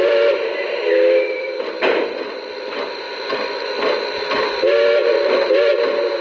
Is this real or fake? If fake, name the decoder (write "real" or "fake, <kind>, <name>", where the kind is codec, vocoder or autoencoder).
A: fake, vocoder, BigVGAN v2